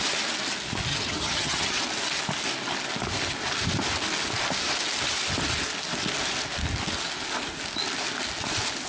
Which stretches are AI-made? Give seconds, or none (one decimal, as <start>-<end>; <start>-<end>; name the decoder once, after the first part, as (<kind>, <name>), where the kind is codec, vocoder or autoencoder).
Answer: 0.9-1.8 (vocoder, HiFi-GAN)